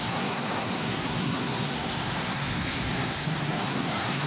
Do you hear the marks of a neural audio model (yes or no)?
yes